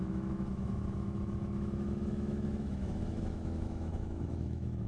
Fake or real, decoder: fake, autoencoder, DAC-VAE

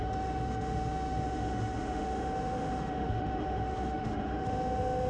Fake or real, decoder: fake, autoencoder, DAC-VAE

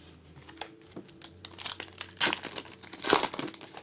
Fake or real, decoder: real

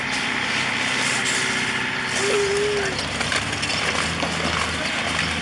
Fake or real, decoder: real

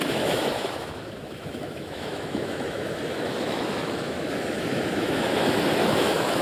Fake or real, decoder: fake, autoencoder, DAC-VAE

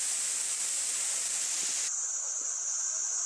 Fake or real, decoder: real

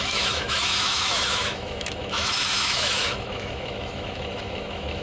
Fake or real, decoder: fake, autoencoder, DAC-VAE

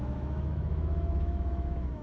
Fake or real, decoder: fake, autoencoder, DAC-VAE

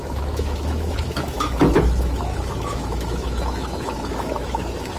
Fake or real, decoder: fake, autoencoder, DAC-VAE